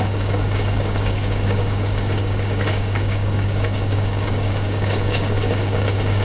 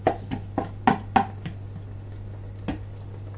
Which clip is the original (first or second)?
second